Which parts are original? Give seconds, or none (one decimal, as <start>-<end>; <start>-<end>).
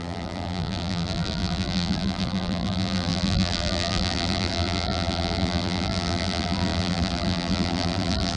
none